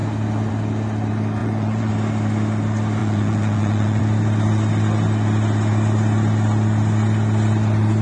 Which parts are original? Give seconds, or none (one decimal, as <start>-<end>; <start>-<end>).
0.0-1.4; 1.9-3.0; 4.0-8.0